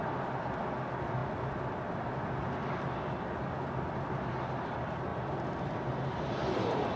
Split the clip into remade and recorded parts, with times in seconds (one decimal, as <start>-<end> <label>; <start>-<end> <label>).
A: 0.0-7.0 recorded

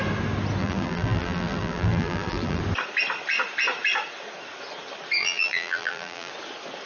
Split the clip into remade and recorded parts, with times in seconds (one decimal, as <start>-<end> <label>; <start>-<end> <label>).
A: 0.0-0.6 recorded; 0.6-2.6 remade; 2.6-5.2 recorded; 5.2-6.3 remade; 6.3-6.9 recorded